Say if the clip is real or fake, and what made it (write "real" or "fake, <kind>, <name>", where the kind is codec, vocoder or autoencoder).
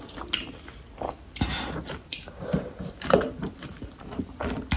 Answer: real